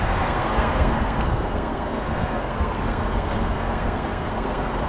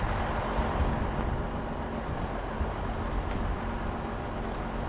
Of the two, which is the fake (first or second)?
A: first